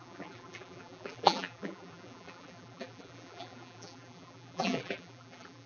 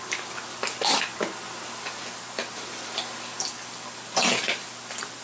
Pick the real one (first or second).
second